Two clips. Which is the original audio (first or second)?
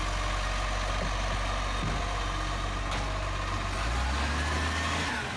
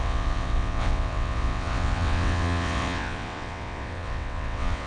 first